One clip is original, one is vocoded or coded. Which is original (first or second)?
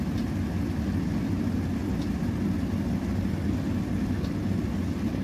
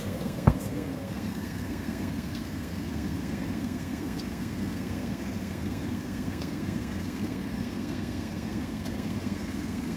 first